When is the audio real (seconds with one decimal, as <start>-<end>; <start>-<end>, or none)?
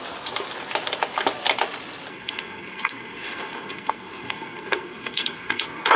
0.0-2.1